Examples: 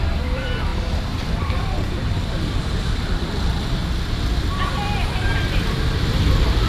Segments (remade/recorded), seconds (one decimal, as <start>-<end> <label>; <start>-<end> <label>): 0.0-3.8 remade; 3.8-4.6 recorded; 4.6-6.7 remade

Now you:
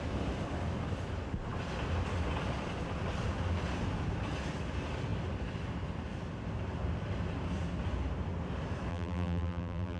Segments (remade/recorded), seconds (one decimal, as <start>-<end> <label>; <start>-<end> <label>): 0.0-8.9 recorded; 8.9-10.0 remade

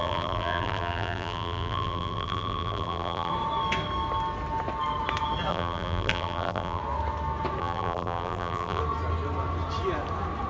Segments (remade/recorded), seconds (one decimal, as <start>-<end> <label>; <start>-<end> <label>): 0.0-3.3 remade; 3.3-5.5 recorded; 5.5-6.8 remade; 6.8-7.6 recorded; 7.6-8.8 remade; 8.8-10.5 recorded